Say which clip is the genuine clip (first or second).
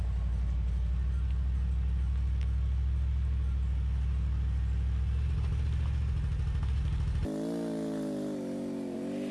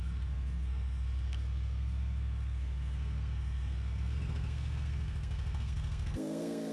first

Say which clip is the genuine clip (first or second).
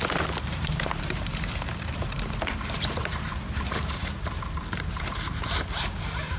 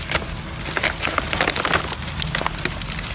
second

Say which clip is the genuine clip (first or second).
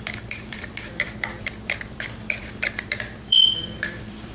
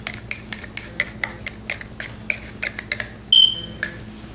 second